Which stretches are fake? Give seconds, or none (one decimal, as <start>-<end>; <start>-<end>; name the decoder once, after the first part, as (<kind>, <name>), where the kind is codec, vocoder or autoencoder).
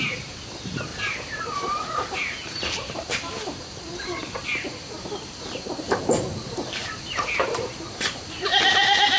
0.0-6.8 (vocoder, BigVGAN v2); 7.4-9.2